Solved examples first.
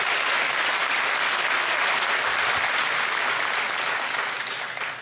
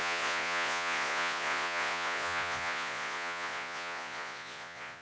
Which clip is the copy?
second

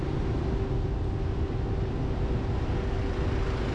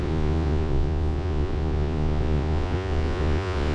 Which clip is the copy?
second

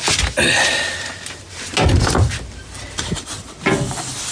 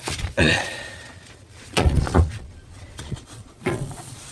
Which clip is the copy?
second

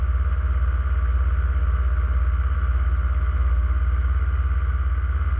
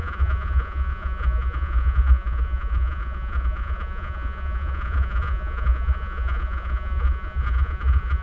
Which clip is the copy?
second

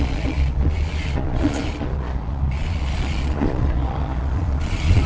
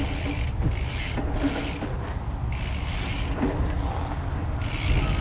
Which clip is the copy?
first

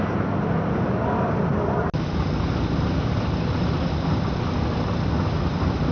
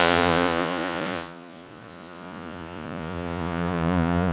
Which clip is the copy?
second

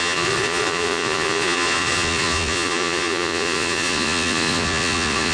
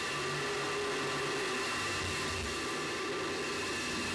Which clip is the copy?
first